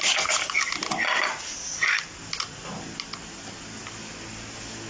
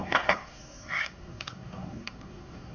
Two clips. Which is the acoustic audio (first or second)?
first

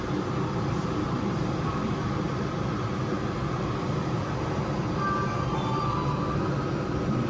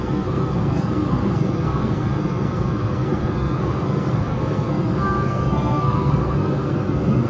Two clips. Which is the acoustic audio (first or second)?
first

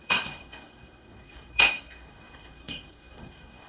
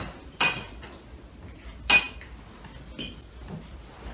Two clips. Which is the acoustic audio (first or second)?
second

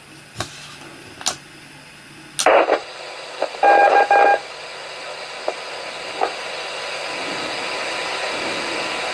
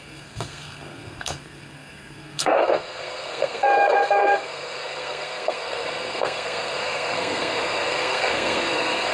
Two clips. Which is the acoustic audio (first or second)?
first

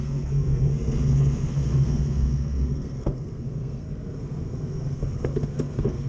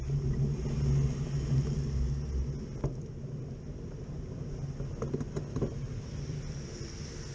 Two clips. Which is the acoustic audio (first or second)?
second